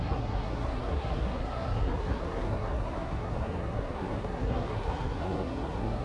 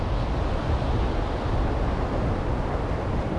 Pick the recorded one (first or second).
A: second